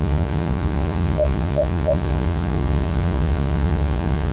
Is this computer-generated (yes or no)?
yes